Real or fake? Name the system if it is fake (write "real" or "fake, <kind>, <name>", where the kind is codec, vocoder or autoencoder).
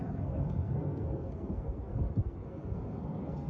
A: fake, codec, SNAC